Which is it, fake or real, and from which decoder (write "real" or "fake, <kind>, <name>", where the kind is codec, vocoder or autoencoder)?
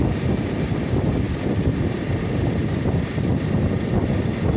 real